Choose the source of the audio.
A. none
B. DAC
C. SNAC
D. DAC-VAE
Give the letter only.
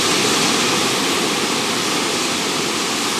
A